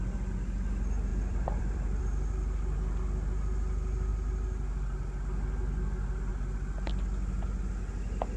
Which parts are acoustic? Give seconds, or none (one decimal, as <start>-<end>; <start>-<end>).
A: 0.0-1.1; 2.0-4.1; 4.7-6.3; 6.9-8.4

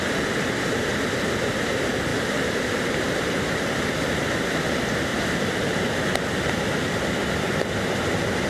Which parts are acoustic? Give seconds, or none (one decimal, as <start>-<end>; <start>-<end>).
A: 0.0-2.1; 4.3-5.1; 5.9-8.5

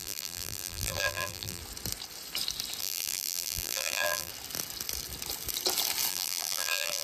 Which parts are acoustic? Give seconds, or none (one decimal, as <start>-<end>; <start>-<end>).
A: 1.6-2.8; 4.3-6.1

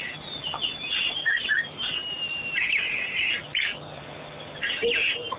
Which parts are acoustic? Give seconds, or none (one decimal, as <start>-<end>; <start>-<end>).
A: 0.0-5.4

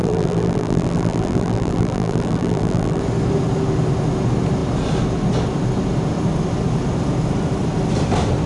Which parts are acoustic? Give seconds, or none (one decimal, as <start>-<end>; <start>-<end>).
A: 3.0-8.5

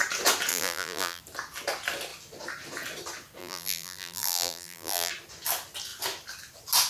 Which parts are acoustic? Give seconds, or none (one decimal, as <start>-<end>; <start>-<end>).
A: 0.0-0.5; 1.2-3.4; 5.1-6.9

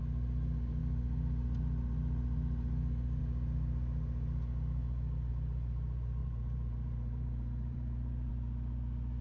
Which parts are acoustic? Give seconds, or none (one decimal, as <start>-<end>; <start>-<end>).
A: 0.0-6.2; 8.3-9.2